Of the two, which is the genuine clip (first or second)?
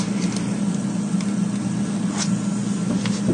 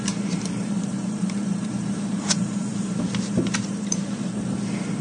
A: first